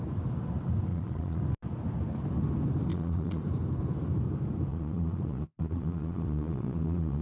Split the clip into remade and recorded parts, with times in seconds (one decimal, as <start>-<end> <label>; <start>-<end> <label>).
0.0-0.9 recorded; 0.9-1.4 remade; 1.4-2.9 recorded; 2.9-3.4 remade; 3.4-4.7 recorded; 4.7-7.2 remade

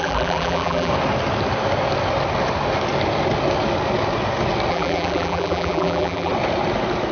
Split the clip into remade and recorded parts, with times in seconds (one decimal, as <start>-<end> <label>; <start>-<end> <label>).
0.0-0.9 remade; 0.9-4.7 recorded; 4.7-6.3 remade; 6.3-7.1 recorded

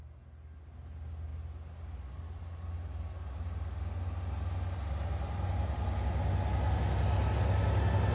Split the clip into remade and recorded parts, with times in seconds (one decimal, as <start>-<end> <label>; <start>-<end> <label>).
0.0-8.1 recorded

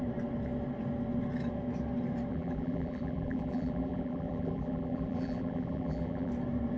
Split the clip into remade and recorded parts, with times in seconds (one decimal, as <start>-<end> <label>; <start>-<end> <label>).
0.0-2.3 recorded; 2.3-6.3 remade; 6.3-6.8 recorded

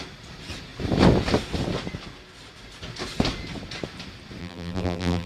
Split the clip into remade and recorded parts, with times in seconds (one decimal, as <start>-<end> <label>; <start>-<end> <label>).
0.0-4.4 recorded; 4.4-5.3 remade

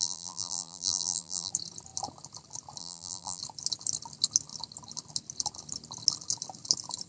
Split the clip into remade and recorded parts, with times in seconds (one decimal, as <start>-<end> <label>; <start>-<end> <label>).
0.0-1.5 remade; 1.5-2.8 recorded; 2.8-3.4 remade; 3.4-7.1 recorded

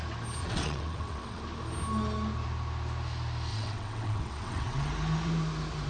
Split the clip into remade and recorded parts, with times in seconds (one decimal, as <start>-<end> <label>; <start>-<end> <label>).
0.0-0.4 recorded; 0.4-1.4 remade; 1.4-3.5 recorded; 3.5-4.9 remade; 4.9-5.9 recorded